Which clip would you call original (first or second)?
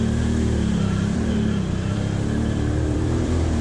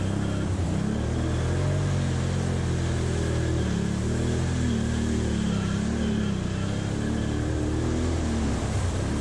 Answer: second